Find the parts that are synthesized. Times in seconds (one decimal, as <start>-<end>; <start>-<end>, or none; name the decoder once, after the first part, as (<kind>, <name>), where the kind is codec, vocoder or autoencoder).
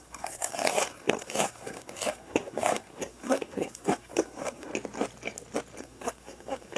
0.0-4.7 (codec, SNAC); 5.8-6.8